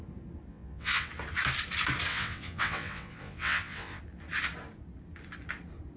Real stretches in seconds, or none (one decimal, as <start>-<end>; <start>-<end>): 0.0-0.5; 1.1-2.1; 4.0-6.0